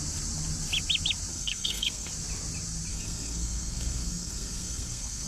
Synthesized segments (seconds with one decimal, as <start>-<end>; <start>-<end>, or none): 1.3-2.1; 2.9-5.3